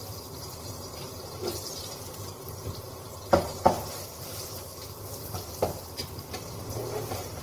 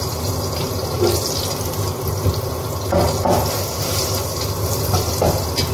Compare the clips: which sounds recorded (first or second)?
second